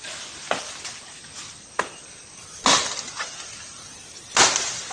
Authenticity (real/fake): real